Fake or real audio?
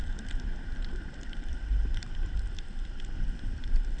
real